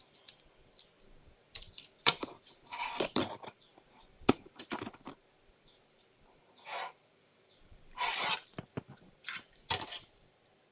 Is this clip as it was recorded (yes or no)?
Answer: no